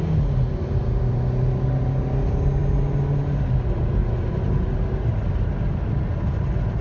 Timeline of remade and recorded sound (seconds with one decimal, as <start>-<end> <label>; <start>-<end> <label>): 0.0-6.8 recorded